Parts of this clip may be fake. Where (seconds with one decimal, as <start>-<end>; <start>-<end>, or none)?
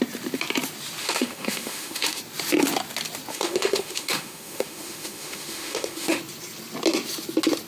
1.0-2.2; 3.3-6.2